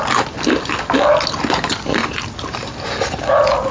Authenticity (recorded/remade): recorded